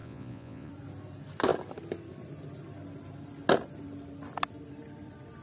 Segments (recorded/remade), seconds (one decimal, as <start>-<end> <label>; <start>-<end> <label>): 0.0-0.7 remade; 0.7-5.4 recorded